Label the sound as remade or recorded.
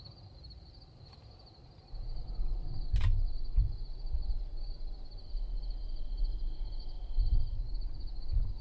recorded